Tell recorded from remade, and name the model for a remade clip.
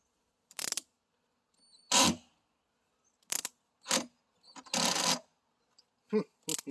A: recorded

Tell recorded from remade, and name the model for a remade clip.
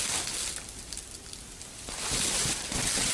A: recorded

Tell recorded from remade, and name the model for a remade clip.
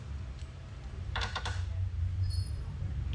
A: remade, vocoder, BigVGAN v2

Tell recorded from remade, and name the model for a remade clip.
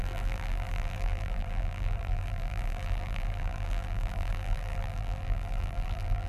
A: remade, vocoder, BigVGAN v2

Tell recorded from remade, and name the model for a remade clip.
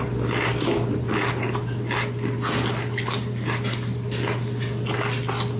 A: recorded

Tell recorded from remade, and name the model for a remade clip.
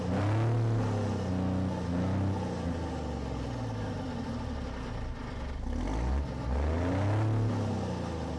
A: recorded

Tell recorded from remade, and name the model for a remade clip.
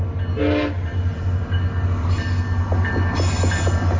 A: recorded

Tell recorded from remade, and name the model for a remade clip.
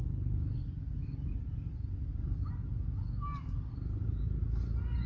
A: recorded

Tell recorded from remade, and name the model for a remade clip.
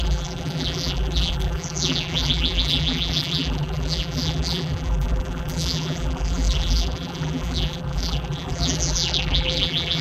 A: remade, vocoder, BigVGAN v2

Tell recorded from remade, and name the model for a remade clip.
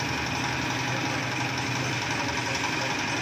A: recorded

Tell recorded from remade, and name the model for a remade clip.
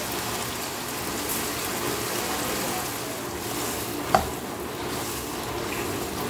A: recorded